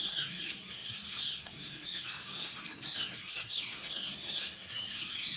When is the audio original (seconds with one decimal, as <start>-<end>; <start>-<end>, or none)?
none